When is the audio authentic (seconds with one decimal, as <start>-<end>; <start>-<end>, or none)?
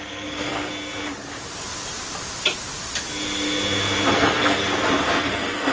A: 0.7-4.1; 4.6-5.2